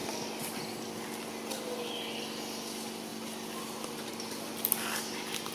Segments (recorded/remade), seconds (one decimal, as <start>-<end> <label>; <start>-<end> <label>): 0.0-5.5 recorded